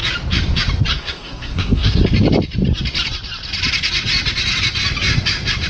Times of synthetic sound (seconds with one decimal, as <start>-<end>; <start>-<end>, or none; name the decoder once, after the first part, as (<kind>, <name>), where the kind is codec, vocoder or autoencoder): 0.9-2.0 (codec, SNAC)

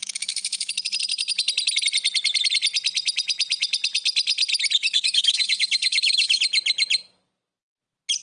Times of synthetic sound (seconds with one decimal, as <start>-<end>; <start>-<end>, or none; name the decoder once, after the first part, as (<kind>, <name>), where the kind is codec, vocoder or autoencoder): 0.0-0.7 (autoencoder, DAC-VAE); 4.8-6.4

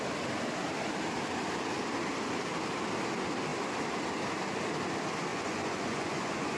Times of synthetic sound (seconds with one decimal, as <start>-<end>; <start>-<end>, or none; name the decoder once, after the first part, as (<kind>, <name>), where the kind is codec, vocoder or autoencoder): 5.3-6.6 (vocoder, Vocos)